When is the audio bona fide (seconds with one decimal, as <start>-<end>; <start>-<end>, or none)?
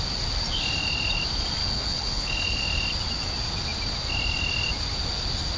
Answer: 0.0-1.6; 2.6-5.6